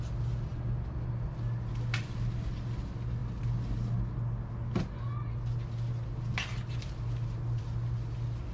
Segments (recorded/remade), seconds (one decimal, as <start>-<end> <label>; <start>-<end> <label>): 0.0-8.5 recorded